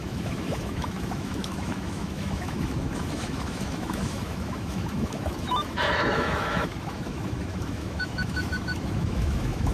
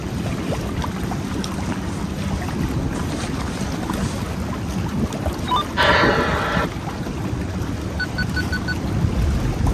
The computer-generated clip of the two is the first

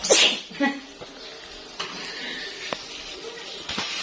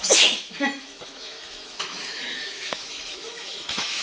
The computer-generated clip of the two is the second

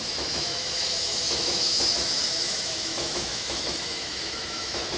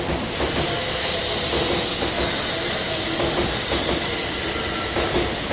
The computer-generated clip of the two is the first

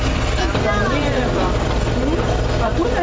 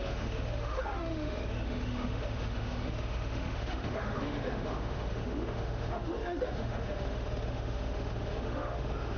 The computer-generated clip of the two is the second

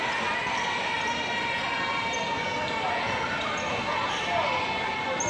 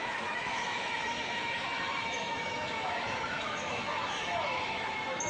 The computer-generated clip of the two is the second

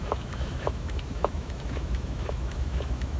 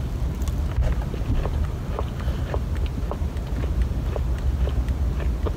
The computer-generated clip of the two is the first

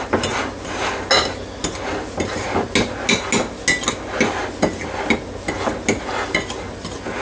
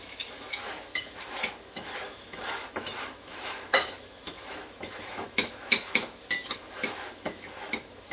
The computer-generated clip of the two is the second